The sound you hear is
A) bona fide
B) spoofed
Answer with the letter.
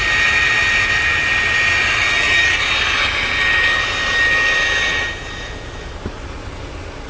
A